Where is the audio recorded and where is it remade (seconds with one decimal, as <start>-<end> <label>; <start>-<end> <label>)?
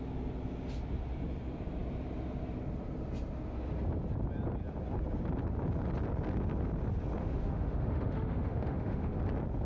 0.0-7.2 recorded; 7.2-9.2 remade; 9.2-9.7 recorded